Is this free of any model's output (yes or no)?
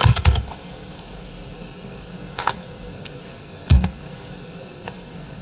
no